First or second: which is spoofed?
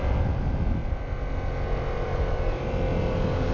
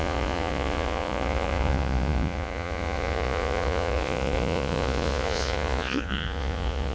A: second